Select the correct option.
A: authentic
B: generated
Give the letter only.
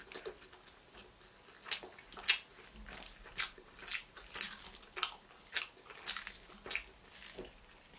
A